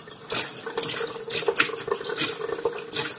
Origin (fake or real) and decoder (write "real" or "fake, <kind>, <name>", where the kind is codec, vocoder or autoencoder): real